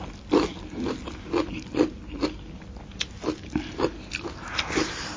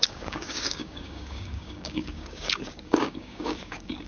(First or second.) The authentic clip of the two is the first